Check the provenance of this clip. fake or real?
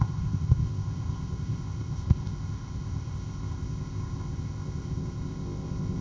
fake